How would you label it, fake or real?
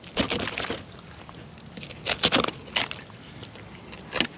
real